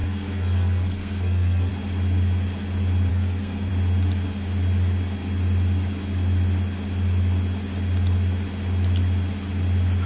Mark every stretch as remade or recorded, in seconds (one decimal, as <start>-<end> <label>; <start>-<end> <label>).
0.0-1.7 remade; 1.7-3.1 recorded; 3.1-3.7 remade; 3.7-10.1 recorded